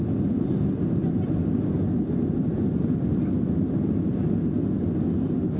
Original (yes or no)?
yes